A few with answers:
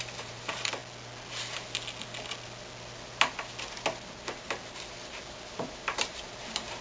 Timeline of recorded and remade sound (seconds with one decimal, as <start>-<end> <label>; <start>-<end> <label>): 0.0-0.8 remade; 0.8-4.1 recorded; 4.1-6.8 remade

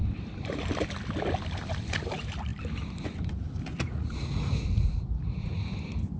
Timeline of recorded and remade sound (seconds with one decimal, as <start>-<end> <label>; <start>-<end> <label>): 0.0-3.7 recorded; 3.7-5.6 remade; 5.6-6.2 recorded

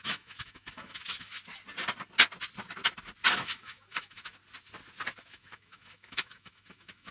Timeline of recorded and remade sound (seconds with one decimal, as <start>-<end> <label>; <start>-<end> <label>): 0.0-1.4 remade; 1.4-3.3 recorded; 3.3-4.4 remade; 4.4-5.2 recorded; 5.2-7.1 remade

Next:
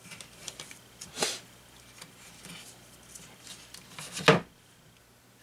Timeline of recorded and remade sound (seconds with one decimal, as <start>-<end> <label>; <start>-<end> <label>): 0.0-5.4 recorded

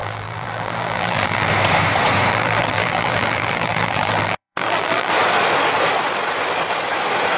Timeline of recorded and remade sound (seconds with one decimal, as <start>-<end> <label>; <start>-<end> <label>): 0.0-1.5 remade; 1.5-2.3 recorded; 2.3-5.1 remade; 5.1-7.4 recorded

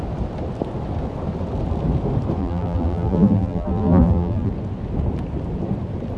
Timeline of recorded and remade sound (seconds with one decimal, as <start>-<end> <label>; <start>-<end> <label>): 0.0-2.4 recorded; 2.4-4.5 remade; 4.5-6.2 recorded